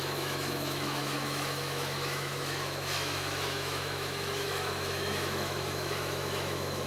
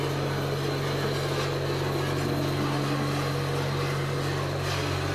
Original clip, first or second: second